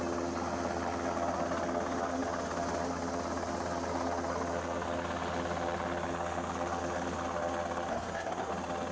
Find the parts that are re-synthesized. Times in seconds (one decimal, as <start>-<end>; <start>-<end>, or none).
7.9-8.5